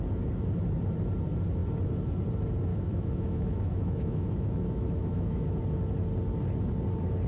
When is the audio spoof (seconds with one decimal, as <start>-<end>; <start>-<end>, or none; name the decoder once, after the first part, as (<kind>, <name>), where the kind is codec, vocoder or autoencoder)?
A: 2.7-5.6 (autoencoder, DAC-VAE)